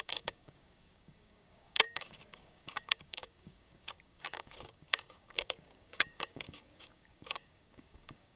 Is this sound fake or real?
fake